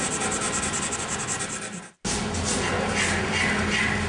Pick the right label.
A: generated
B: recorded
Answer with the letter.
B